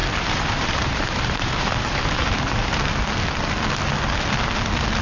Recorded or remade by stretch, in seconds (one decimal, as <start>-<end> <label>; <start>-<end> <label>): 0.0-3.0 remade; 3.0-5.0 recorded